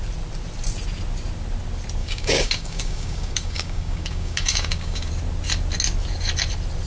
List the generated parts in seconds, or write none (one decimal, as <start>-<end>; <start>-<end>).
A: 2.0-5.1